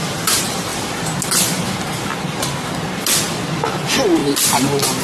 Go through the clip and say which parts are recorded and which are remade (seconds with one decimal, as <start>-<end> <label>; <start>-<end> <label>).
0.0-0.7 remade; 0.7-3.7 recorded; 3.7-4.2 remade; 4.2-5.0 recorded